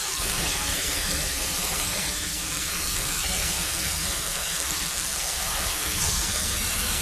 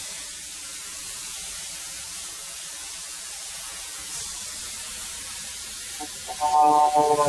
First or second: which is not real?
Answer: first